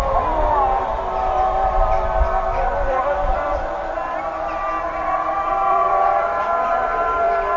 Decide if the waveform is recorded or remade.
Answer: remade